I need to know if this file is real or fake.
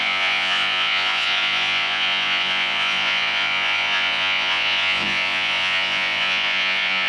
fake